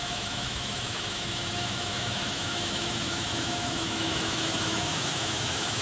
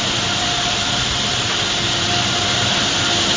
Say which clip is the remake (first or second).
first